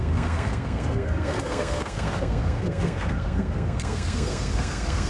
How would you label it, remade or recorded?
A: remade